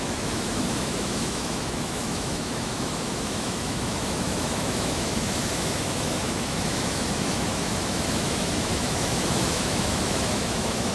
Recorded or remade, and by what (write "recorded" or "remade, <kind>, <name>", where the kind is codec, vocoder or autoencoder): remade, autoencoder, DAC-VAE